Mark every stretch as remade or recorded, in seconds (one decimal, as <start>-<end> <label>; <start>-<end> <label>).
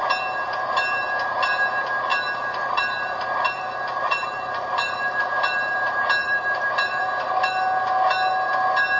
0.0-2.1 recorded; 2.1-5.2 remade; 5.2-6.2 recorded; 6.2-7.0 remade; 7.0-9.0 recorded